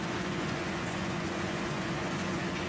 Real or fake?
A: fake